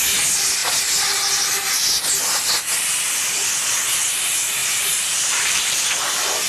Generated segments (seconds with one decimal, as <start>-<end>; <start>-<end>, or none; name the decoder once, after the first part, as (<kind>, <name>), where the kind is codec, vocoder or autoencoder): 4.6-5.8 (vocoder, BigVGAN v2)